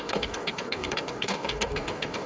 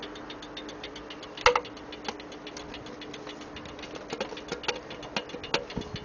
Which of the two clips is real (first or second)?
second